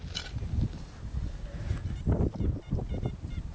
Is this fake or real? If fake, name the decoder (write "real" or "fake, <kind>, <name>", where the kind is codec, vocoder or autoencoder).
real